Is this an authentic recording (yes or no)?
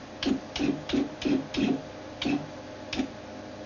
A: yes